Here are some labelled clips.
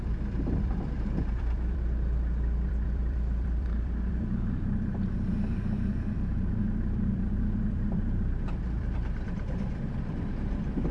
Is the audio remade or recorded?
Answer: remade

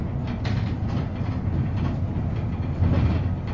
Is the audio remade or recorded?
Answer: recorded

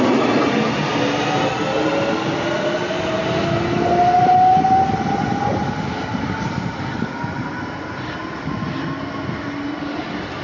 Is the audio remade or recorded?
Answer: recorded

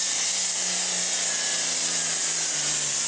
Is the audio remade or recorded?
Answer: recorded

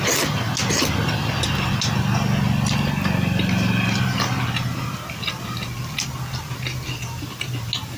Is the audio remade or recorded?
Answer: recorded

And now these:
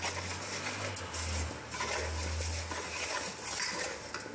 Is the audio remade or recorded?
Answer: recorded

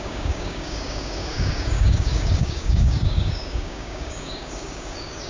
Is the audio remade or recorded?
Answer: remade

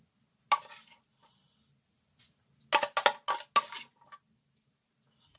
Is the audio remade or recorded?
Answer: recorded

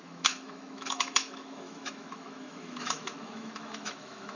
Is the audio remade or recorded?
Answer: remade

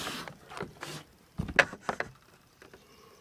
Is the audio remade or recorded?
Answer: recorded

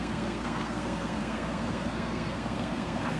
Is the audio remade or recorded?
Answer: remade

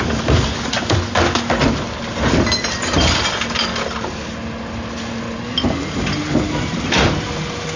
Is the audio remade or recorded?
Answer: recorded